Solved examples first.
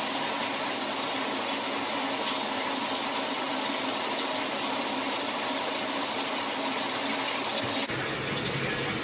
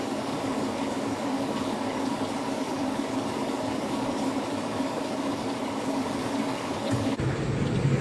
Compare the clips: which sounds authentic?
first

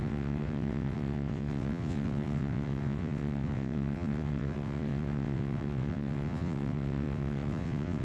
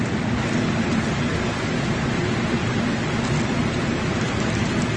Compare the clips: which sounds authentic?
second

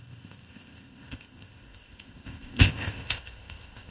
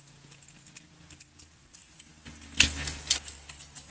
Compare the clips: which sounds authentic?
second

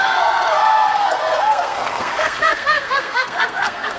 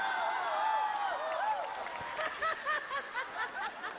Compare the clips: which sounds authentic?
second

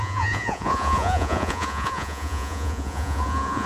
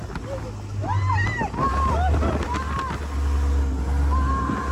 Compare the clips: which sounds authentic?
second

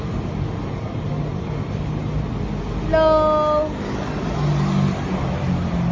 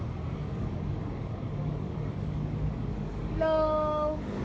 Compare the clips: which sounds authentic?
first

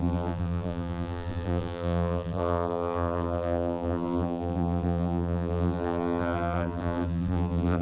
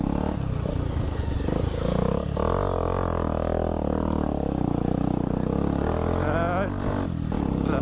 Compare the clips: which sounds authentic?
second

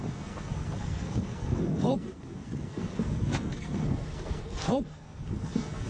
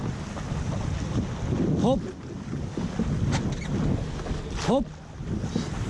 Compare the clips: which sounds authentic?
second